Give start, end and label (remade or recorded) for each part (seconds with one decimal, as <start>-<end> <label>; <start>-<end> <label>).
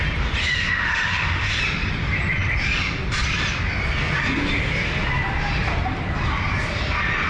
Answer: 0.0-0.4 recorded; 0.4-1.6 remade; 1.6-7.3 recorded